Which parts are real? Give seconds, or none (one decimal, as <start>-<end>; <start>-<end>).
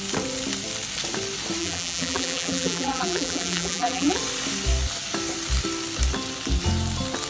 0.0-1.6; 4.2-7.3